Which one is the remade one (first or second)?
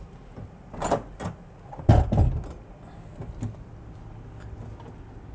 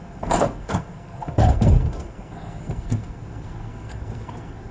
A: second